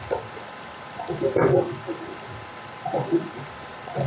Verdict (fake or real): fake